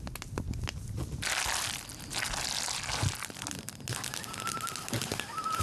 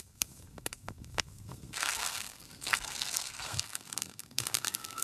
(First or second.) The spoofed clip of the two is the second